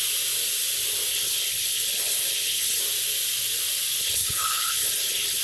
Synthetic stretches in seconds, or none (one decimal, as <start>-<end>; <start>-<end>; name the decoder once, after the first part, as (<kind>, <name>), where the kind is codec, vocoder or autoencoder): 1.1-2.8 (codec, HILCodec); 4.0-5.4